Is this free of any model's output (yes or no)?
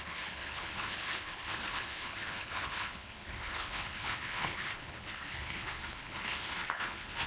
no